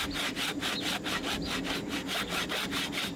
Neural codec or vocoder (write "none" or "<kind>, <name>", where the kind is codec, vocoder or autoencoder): none